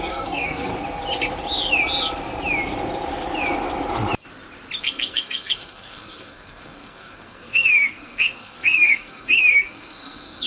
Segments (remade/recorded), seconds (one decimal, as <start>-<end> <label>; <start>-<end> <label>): 0.0-0.7 remade; 0.7-4.8 recorded; 4.8-10.5 remade